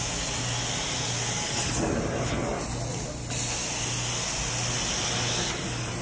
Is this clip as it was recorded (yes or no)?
yes